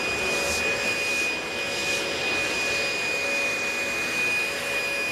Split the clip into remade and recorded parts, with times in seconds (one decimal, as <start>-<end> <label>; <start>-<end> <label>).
0.0-5.1 recorded